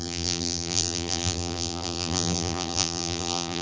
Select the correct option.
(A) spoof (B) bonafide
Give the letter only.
A